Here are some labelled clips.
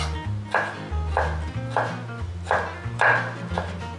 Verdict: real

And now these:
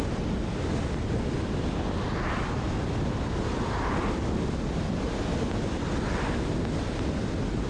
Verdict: real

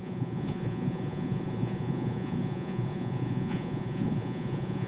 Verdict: fake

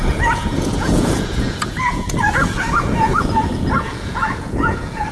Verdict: fake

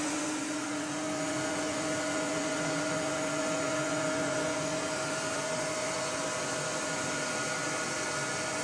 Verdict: fake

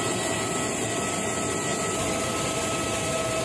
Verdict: real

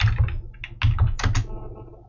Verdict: real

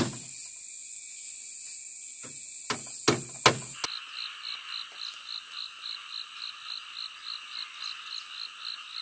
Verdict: real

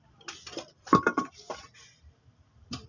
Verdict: real